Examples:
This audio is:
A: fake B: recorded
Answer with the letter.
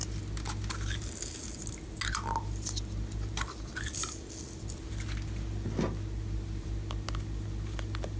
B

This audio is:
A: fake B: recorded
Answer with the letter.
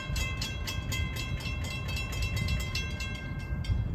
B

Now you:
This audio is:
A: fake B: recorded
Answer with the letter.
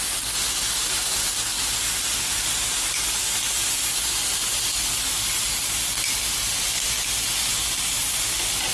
B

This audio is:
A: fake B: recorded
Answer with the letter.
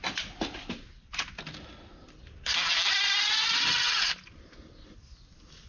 B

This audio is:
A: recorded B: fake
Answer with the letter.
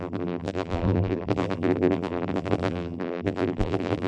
B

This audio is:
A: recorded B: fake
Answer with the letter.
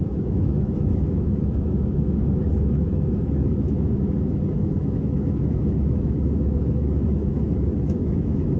B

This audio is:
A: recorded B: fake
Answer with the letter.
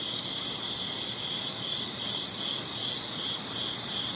A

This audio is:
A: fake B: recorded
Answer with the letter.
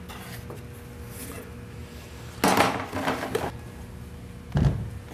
B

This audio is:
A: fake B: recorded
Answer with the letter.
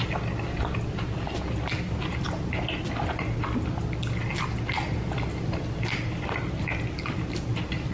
B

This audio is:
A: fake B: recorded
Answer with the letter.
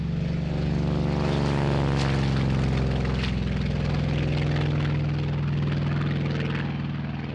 B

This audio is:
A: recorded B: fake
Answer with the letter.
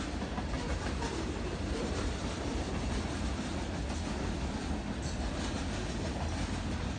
A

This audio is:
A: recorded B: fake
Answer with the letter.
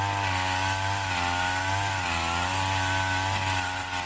A